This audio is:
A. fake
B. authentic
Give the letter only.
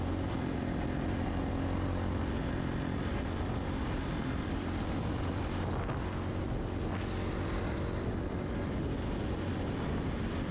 B